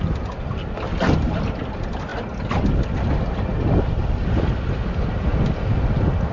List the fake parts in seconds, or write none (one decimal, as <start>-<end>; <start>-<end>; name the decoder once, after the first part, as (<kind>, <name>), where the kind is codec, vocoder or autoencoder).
3.5-4.0 (vocoder, BigVGAN v2)